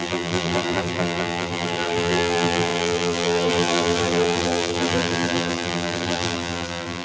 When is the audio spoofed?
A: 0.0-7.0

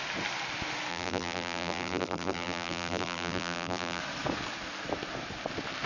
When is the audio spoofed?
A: 0.9-4.0

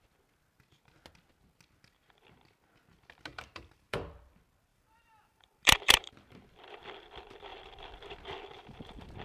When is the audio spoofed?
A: 3.3-4.0; 4.7-6.1

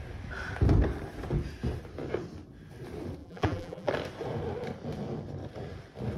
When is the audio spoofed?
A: 3.2-3.9

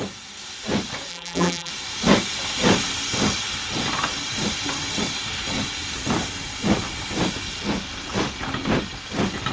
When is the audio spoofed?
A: 1.1-1.7

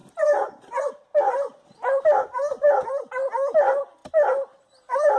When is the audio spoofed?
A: 0.0-0.6

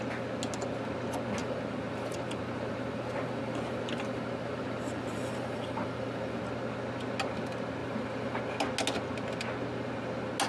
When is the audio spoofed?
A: 1.4-6.4; 7.8-8.4